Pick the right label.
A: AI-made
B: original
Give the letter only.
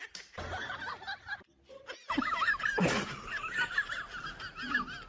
B